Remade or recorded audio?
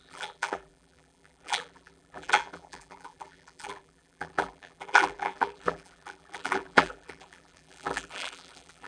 remade